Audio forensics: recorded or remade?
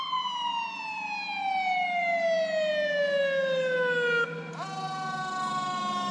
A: recorded